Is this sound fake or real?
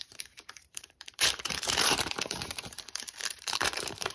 fake